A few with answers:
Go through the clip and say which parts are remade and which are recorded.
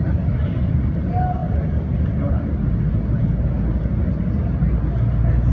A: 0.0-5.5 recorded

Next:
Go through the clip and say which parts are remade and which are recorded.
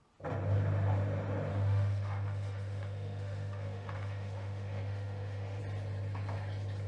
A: 0.0-1.5 recorded; 1.5-5.6 remade; 5.6-6.9 recorded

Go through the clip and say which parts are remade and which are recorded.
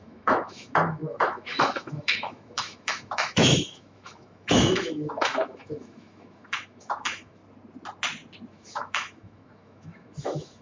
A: 0.0-7.4 remade; 7.4-8.5 recorded; 8.5-10.6 remade